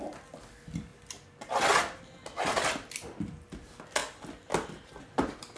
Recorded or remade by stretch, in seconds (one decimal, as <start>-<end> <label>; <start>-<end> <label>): 0.0-5.6 recorded